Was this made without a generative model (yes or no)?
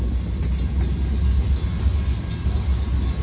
yes